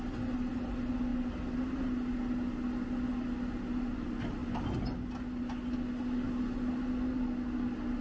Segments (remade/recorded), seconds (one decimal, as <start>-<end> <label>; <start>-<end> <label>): 0.0-8.0 recorded